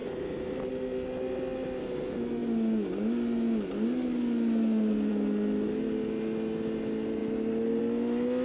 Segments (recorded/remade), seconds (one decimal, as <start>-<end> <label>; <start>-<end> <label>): 0.0-8.4 recorded